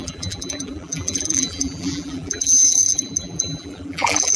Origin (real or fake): fake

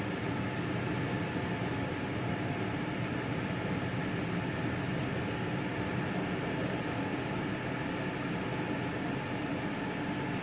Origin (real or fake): real